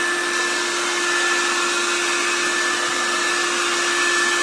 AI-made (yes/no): no